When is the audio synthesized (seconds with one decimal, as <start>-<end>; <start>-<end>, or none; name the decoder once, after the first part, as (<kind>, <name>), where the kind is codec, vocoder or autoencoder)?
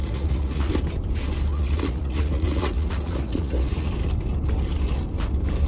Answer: 0.0-0.7 (vocoder, Vocos); 1.5-3.9